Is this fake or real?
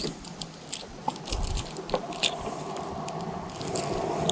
real